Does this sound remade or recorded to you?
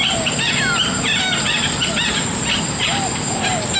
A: recorded